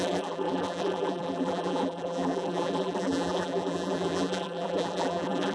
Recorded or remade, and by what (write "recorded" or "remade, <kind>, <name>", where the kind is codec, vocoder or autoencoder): remade, vocoder, BigVGAN v2